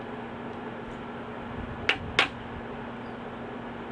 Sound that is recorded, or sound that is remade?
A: recorded